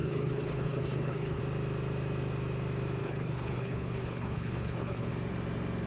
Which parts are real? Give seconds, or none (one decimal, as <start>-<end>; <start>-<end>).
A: 1.4-3.0; 5.1-5.9